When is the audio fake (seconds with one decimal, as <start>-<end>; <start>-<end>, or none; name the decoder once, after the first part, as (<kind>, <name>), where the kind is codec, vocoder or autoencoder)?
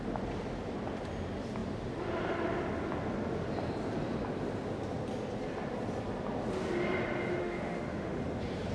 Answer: 7.4-8.2 (autoencoder, DAC-VAE)